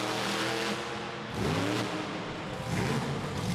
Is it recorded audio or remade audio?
recorded